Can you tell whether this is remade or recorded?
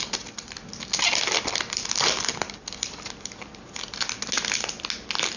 recorded